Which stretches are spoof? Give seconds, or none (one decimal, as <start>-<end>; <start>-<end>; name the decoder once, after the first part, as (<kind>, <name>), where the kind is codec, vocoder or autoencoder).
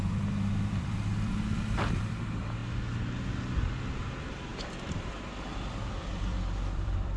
0.0-2.6 (vocoder, BigVGAN v2); 3.9-4.5; 5.9-7.2